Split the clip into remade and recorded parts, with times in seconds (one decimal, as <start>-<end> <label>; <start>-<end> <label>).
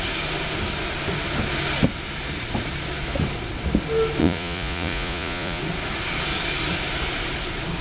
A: 0.0-4.2 recorded; 4.2-5.6 remade; 5.6-7.8 recorded